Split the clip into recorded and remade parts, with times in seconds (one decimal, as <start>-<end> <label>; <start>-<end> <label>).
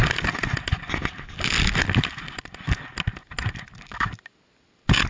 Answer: 0.0-5.1 recorded